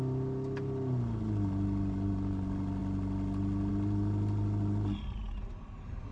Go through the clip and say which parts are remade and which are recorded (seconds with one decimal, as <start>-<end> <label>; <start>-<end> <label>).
0.0-6.1 recorded